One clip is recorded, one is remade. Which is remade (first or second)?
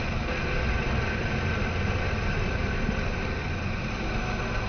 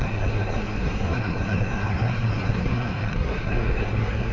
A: second